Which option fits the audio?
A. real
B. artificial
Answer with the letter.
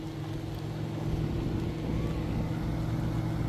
A